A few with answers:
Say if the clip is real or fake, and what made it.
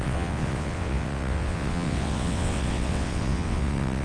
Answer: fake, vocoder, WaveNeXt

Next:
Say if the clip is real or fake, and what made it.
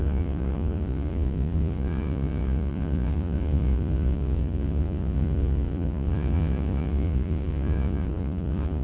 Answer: fake, vocoder, Vocos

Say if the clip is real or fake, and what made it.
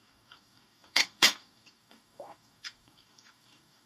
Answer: fake, codec, DAC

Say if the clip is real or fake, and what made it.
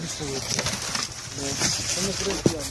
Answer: real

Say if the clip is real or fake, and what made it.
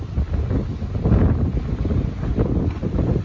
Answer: real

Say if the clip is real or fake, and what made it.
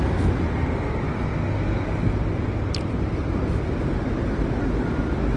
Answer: real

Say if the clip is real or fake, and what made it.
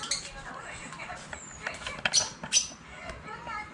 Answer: real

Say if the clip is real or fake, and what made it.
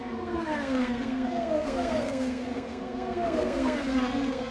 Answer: fake, codec, SNAC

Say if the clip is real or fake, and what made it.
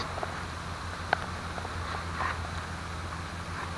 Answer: real